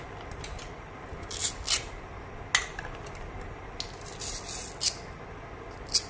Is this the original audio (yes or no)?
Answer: yes